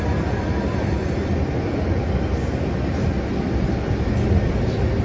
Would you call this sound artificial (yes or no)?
no